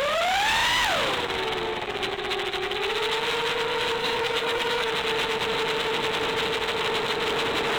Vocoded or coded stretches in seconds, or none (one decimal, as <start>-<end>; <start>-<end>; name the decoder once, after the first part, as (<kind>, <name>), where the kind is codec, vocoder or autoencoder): 4.0-4.9 (codec, DAC)